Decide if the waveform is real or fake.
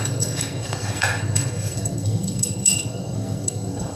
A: fake